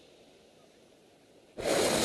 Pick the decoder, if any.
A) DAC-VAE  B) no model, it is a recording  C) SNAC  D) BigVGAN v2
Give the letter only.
B